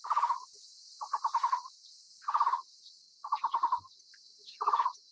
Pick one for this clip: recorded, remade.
recorded